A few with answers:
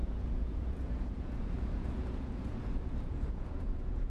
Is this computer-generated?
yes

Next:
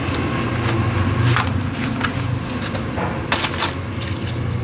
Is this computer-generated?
no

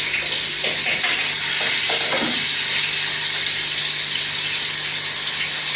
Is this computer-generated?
no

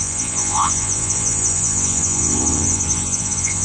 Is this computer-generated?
yes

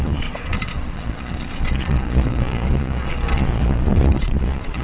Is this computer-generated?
yes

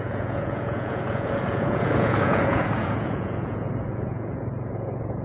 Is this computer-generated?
yes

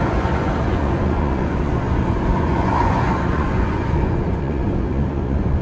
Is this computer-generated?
yes